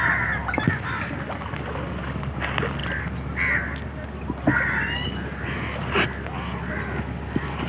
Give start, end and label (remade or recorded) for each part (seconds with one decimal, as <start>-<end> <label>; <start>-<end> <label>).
0.0-0.4 recorded; 0.4-1.0 remade; 1.0-2.8 recorded; 2.8-5.8 remade; 5.8-7.7 recorded

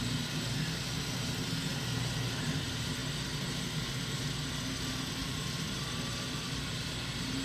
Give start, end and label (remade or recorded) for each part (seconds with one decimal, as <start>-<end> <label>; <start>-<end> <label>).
0.0-5.2 recorded; 5.2-6.9 remade; 6.9-7.4 recorded

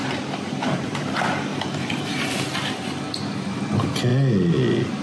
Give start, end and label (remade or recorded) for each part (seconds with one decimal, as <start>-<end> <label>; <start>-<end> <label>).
0.0-1.0 remade; 1.0-1.5 recorded; 1.5-2.3 remade; 2.3-5.0 recorded

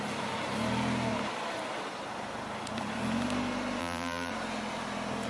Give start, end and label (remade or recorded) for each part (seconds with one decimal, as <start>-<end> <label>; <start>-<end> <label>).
0.0-3.8 recorded; 3.8-4.3 remade; 4.3-5.3 recorded

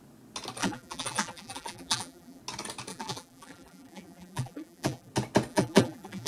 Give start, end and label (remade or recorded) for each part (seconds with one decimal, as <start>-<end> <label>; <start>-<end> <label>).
0.0-0.6 recorded; 0.6-2.4 remade; 2.4-2.9 recorded; 2.9-5.1 remade; 5.1-5.5 recorded; 5.5-6.3 remade

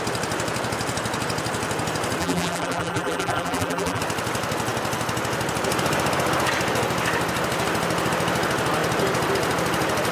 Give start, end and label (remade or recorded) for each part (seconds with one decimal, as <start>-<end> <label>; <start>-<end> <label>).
0.0-2.2 recorded; 2.2-4.0 remade; 4.0-10.1 recorded